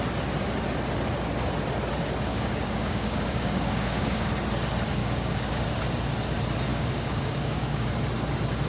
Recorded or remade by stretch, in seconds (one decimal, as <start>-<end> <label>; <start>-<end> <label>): 0.0-2.3 recorded; 2.3-4.3 remade; 4.3-5.0 recorded; 5.0-5.6 remade; 5.6-6.7 recorded; 6.7-7.9 remade; 7.9-8.7 recorded